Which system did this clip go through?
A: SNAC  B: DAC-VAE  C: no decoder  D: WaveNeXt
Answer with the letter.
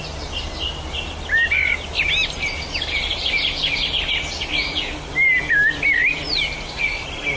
C